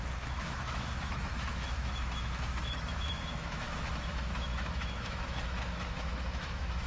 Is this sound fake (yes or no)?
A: yes